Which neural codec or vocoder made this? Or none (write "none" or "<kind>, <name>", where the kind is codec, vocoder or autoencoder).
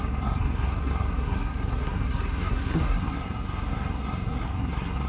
codec, SNAC